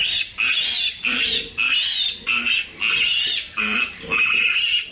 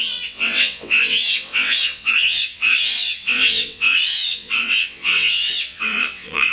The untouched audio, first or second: first